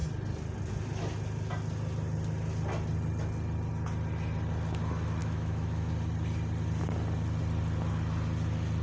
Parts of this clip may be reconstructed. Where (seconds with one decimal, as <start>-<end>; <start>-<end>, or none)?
5.2-5.9